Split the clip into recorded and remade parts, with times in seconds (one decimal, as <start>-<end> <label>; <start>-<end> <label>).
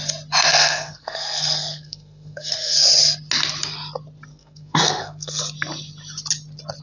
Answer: 0.0-0.5 recorded; 0.5-2.8 remade; 2.8-4.3 recorded; 4.3-5.4 remade; 5.4-6.8 recorded